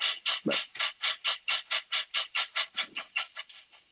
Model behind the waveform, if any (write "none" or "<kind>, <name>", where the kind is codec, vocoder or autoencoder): none